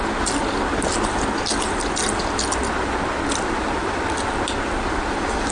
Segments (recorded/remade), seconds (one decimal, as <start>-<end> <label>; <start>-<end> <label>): 0.0-5.5 recorded